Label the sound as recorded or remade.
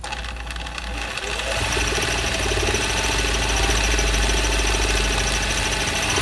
recorded